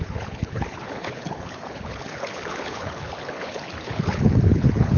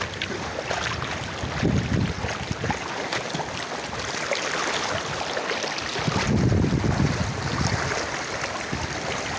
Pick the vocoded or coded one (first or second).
first